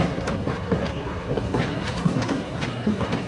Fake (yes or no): yes